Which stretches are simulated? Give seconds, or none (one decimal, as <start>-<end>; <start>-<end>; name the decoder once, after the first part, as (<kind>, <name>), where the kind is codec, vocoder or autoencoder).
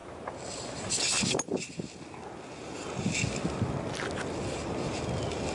none